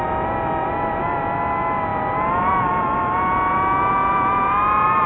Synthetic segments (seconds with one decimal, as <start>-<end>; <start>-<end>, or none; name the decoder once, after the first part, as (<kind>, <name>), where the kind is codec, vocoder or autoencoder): none